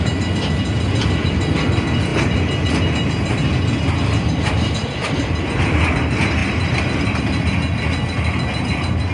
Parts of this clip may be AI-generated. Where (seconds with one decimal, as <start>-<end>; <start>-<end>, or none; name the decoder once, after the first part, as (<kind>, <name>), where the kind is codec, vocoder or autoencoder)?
none